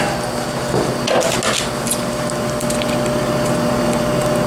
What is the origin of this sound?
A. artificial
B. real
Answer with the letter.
B